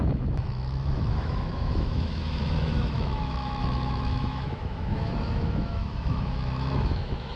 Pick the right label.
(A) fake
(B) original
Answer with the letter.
A